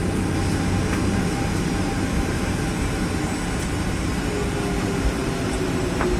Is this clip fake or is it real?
real